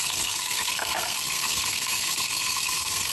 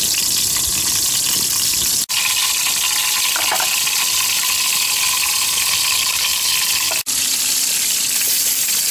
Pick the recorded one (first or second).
second